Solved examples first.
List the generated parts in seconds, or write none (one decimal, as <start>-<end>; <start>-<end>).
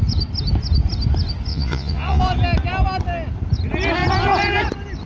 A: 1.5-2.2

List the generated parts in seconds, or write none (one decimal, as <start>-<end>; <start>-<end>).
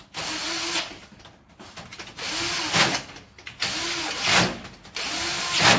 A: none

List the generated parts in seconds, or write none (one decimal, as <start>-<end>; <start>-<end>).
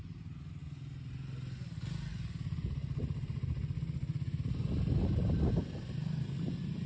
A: none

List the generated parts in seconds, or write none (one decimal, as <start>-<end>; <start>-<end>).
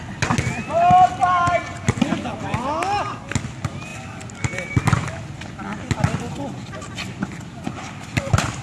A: none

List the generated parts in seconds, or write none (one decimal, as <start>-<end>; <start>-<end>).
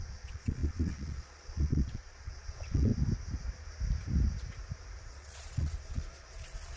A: 0.0-2.9; 5.0-6.8